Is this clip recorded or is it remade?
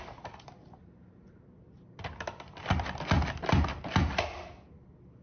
recorded